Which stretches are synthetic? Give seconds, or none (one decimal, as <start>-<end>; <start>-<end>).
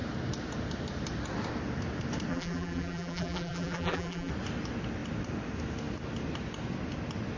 2.3-4.3